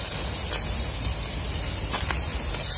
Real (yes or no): yes